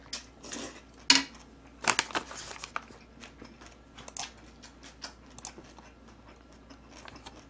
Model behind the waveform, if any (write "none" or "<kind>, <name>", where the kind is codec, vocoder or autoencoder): none